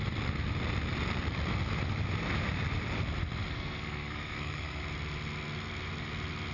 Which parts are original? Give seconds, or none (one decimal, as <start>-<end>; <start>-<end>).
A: 0.0-3.5; 4.8-6.5